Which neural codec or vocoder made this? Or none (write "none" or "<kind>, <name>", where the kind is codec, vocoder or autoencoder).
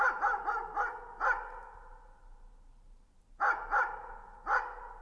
none